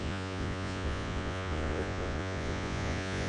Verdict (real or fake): fake